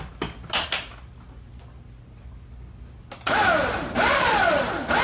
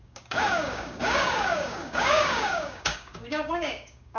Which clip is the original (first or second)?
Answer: first